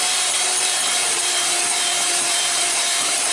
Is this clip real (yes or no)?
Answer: no